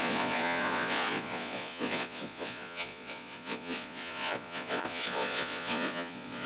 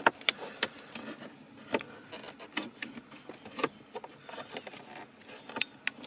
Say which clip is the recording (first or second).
second